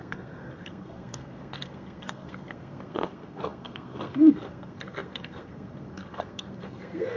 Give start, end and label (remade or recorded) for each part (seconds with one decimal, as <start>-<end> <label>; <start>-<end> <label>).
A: 0.0-7.2 remade